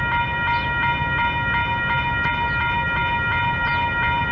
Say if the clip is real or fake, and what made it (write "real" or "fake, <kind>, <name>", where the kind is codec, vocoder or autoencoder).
real